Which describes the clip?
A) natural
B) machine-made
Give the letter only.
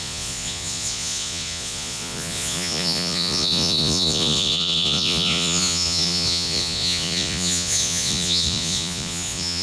B